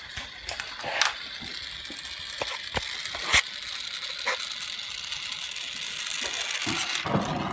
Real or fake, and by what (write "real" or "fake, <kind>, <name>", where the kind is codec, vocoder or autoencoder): real